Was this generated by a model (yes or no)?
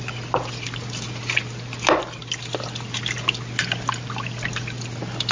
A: no